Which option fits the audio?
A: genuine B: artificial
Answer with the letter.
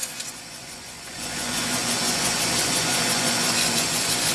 B